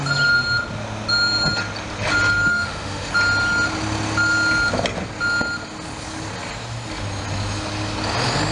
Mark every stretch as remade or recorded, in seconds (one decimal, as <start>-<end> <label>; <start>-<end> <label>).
0.0-2.5 recorded; 2.5-3.1 remade; 3.1-8.5 recorded